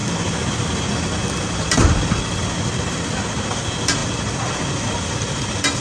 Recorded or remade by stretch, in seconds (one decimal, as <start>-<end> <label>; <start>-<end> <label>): 0.0-5.8 recorded